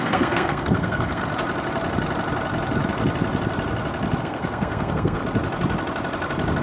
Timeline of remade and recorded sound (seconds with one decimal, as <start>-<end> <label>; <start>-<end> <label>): 0.0-1.2 remade; 1.2-4.2 recorded; 4.2-5.2 remade; 5.2-6.6 recorded